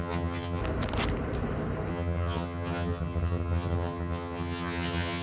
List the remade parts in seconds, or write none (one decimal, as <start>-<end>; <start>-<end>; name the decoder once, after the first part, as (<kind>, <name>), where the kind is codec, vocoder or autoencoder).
0.0-0.6 (vocoder, HiFi-GAN); 1.9-5.2